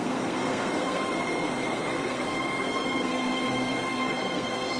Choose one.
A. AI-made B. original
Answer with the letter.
A